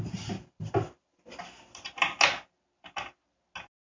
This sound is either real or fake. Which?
real